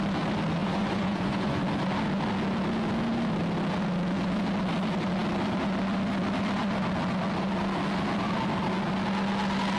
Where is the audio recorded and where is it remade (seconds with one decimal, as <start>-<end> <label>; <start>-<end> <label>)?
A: 0.0-0.6 recorded; 0.6-1.6 remade; 1.6-9.8 recorded